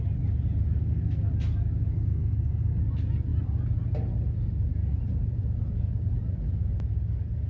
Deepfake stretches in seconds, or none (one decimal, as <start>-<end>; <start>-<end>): 2.1-2.8

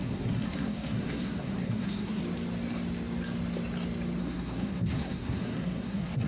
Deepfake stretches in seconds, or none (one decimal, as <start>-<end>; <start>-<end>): 0.0-2.2; 4.2-6.3

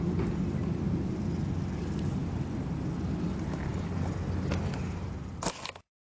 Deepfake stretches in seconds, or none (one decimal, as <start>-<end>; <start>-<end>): none

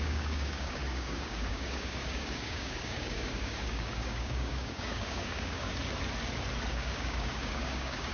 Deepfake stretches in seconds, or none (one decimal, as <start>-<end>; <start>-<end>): 0.0-5.7; 6.7-8.1

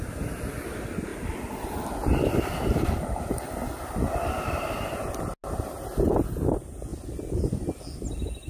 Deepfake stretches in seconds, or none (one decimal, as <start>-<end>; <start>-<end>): none

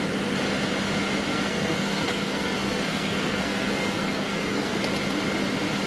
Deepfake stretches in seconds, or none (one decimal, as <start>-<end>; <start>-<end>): 1.3-4.8